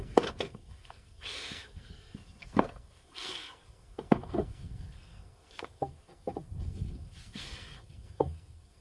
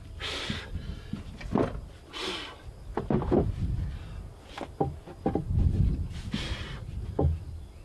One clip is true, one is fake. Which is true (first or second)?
second